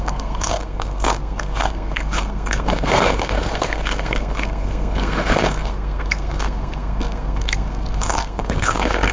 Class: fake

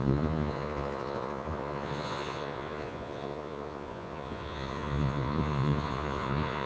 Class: fake